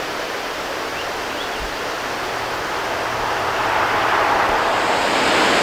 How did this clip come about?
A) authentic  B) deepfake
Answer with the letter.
A